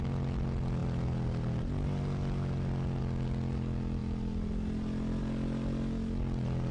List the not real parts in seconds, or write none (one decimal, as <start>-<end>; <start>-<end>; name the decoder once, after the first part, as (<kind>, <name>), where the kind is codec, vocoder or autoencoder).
none